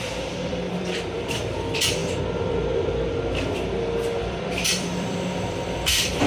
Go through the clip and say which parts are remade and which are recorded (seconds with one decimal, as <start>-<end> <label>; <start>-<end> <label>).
0.0-2.0 remade; 2.0-4.2 recorded; 4.2-6.3 remade